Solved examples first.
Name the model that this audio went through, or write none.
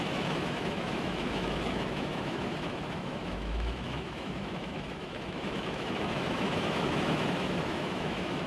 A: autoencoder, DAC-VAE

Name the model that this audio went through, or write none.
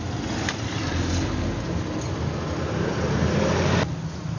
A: none